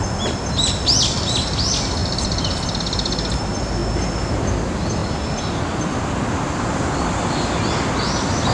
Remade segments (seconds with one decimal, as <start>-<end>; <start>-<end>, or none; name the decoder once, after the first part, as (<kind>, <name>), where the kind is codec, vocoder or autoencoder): none